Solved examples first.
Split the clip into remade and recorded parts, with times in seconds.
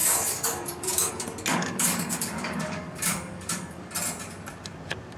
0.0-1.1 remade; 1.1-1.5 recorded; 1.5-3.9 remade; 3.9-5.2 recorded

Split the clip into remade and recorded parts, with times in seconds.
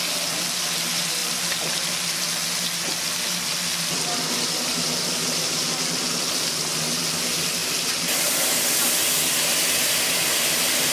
0.0-10.9 recorded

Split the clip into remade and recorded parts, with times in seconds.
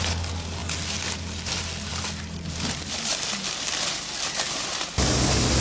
0.0-5.6 recorded